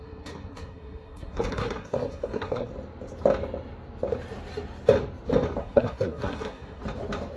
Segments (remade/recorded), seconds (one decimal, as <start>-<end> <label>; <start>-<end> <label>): 0.0-2.7 remade; 2.7-5.6 recorded; 5.6-6.8 remade; 6.8-7.4 recorded